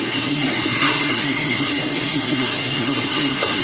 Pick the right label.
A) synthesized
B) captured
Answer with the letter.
A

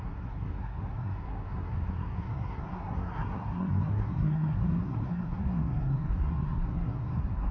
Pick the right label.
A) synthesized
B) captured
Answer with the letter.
A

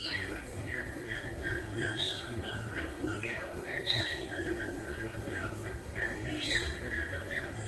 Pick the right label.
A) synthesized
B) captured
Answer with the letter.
A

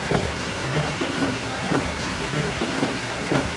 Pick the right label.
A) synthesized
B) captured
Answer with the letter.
A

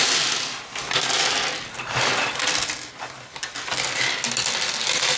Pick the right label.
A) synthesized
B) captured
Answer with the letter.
B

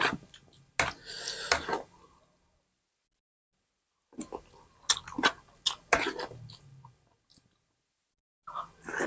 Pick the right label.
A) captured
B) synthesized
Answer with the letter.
A